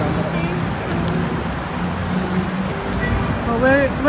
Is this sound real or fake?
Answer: real